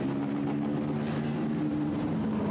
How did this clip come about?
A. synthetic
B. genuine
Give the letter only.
B